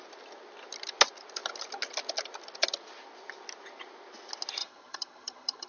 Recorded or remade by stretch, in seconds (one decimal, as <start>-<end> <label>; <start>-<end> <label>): 0.0-4.6 recorded; 4.6-5.7 remade